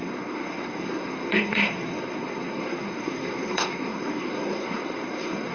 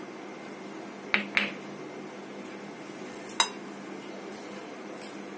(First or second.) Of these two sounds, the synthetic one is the first